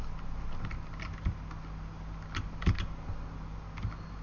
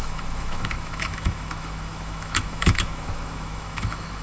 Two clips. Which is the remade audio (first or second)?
second